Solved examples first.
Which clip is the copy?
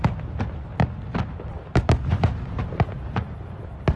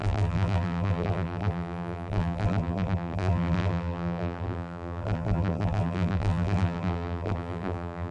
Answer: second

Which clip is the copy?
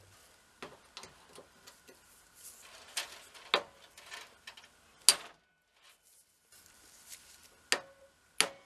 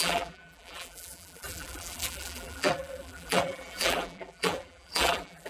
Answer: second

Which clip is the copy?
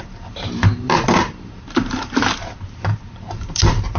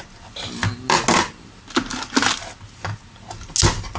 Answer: first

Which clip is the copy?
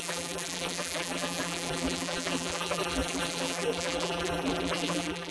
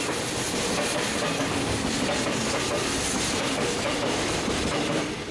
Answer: first